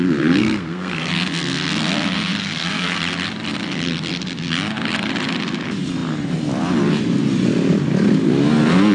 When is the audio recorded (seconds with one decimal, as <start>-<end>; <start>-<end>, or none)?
0.0-0.4; 1.1-2.4; 3.0-8.9